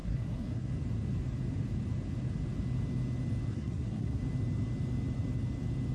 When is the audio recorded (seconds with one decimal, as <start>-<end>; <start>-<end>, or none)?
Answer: 0.7-3.5; 4.2-5.9